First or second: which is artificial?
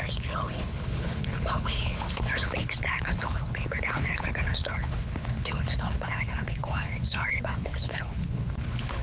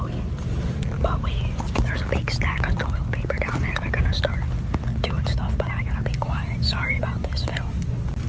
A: first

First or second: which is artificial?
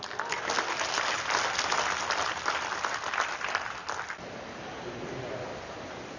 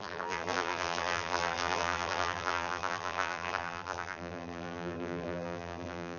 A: second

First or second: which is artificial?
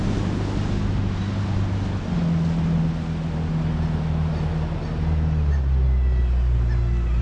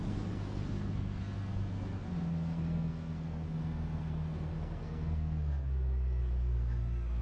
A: second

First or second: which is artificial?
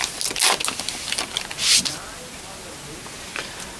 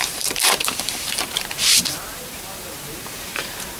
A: second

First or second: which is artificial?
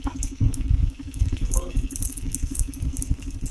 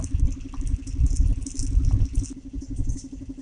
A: first